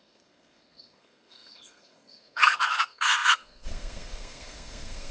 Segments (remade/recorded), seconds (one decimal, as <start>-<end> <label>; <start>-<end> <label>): 0.0-5.1 remade